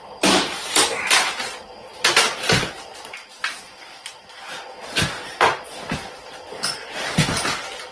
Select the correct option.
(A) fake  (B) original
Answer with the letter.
B